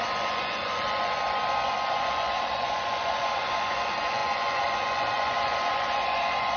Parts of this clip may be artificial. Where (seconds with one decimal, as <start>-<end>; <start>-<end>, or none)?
0.0-6.6